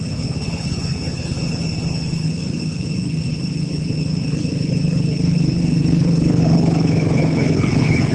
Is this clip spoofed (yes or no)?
yes